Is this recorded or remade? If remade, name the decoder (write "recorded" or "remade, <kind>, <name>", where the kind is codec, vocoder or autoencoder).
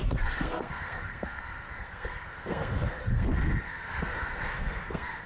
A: remade, codec, SNAC